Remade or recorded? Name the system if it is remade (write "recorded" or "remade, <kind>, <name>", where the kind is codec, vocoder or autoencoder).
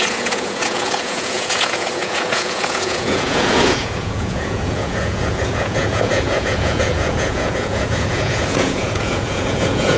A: remade, vocoder, Vocos